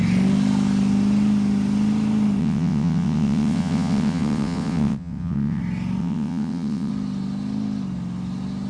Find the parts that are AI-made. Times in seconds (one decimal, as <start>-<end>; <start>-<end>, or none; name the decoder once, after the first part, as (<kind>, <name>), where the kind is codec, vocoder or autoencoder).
2.4-5.6 (vocoder, WaveNeXt); 6.0-6.9